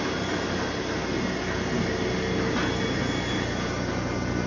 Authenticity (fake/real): real